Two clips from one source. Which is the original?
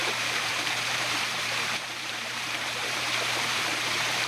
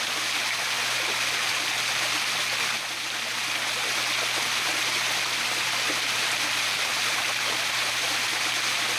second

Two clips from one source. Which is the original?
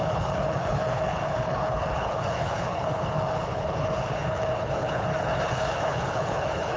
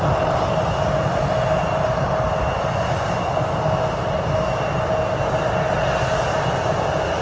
second